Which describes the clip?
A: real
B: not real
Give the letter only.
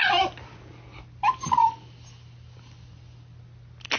A